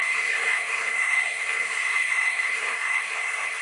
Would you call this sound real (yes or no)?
no